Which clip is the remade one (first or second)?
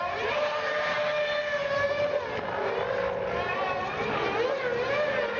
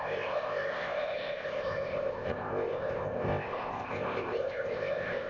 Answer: second